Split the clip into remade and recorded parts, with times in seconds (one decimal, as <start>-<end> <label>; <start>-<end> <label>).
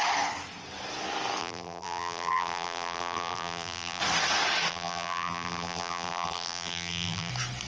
0.0-1.4 recorded; 1.4-4.0 remade; 4.0-4.7 recorded; 4.7-7.3 remade; 7.3-7.7 recorded